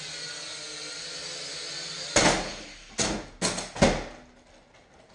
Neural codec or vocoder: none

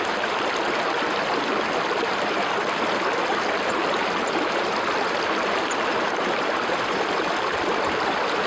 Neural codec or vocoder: none